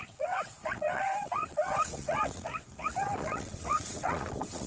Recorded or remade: remade